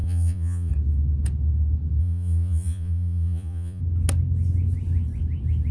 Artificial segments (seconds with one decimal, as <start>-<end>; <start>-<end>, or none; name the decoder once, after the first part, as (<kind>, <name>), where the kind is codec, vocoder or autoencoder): 0.0-0.7 (vocoder, Vocos); 2.0-3.8